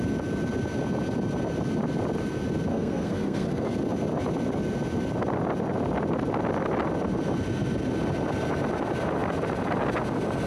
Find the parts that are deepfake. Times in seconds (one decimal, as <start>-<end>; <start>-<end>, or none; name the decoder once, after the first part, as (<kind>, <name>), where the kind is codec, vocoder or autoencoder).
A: 2.7-3.6 (codec, SNAC)